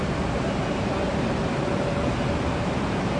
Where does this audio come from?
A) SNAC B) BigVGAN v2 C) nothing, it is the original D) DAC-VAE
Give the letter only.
B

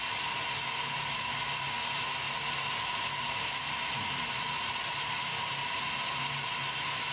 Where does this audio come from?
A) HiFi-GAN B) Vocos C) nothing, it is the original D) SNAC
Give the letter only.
C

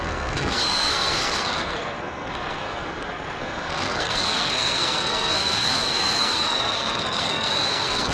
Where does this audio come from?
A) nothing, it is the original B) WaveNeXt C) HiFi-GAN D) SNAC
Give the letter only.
D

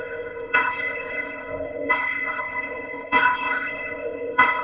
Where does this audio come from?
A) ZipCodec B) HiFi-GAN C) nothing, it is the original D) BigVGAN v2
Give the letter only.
A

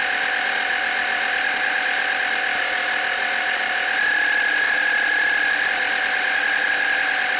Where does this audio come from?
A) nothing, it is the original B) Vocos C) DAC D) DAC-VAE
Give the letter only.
A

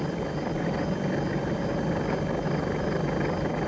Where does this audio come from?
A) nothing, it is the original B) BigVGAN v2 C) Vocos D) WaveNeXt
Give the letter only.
A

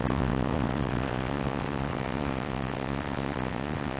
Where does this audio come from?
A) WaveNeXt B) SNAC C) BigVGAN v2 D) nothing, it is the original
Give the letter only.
A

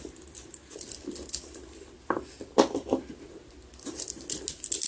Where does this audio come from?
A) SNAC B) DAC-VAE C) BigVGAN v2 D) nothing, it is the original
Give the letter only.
D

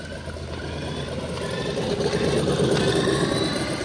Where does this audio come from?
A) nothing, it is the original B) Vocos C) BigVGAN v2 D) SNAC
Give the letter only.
A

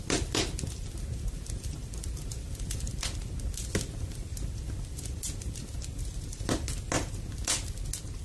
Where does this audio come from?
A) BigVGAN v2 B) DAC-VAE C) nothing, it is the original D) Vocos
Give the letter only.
C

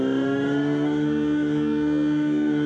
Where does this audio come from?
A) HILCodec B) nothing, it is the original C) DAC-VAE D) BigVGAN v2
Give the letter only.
C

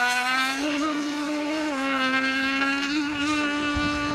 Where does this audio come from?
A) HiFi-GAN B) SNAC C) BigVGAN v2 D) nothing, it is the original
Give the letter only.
B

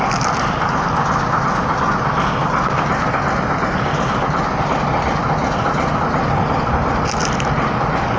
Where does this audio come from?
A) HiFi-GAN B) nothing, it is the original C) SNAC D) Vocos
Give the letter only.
B